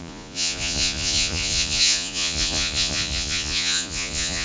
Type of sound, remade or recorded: remade